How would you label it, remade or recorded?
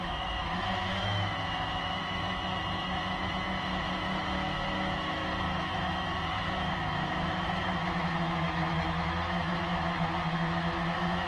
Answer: remade